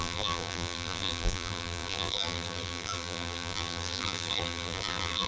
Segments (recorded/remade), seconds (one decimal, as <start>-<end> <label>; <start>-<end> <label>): 0.0-5.3 remade